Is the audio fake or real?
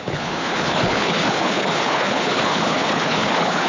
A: fake